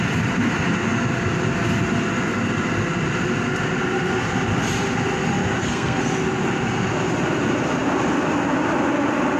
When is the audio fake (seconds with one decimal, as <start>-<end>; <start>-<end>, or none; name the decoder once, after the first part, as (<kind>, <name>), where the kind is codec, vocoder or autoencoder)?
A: 5.6-6.1 (codec, SNAC)

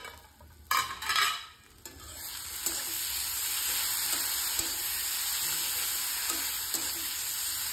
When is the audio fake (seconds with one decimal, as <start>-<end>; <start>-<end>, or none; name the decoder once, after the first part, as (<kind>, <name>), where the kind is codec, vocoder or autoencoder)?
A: none

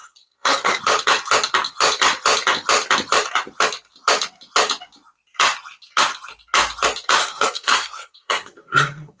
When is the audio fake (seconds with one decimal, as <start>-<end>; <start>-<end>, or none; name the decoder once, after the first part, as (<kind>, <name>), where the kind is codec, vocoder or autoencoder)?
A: 0.0-0.8 (codec, SNAC); 7.2-9.2